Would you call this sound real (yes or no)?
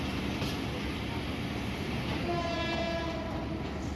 yes